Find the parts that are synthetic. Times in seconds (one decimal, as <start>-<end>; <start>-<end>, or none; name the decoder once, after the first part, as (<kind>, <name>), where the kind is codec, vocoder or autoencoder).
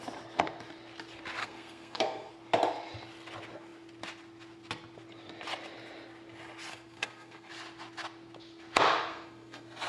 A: 1.4-2.3 (codec, SNAC); 6.7-7.5; 9.1-9.9